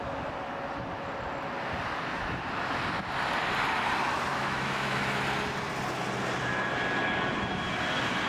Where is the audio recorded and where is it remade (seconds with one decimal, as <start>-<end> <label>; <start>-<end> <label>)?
0.0-4.3 recorded; 4.3-5.2 remade; 5.2-8.3 recorded